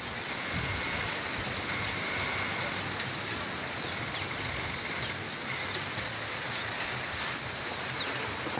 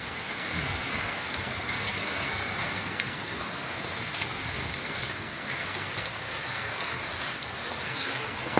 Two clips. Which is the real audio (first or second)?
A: first